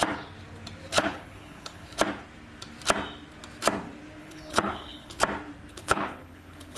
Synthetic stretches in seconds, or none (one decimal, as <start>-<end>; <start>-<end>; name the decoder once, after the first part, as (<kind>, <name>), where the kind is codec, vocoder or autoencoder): 0.9-2.0 (codec, HILCodec); 4.2-5.2; 5.7-6.8